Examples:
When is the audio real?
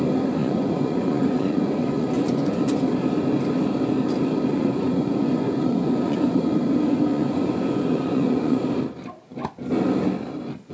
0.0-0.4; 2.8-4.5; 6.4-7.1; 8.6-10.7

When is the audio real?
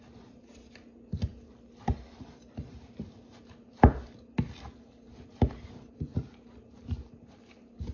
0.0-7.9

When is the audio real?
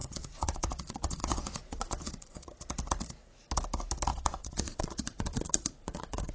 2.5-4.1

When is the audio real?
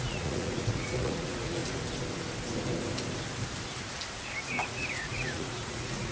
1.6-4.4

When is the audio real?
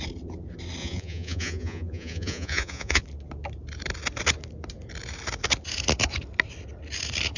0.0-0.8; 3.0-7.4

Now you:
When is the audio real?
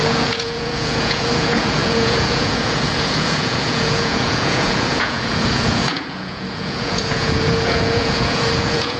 none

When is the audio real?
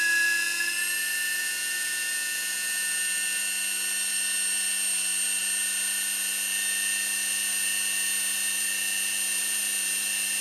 0.0-1.4; 3.4-10.4